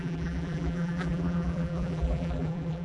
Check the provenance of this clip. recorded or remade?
remade